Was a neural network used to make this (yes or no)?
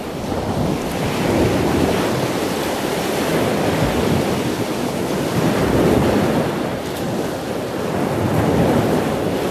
no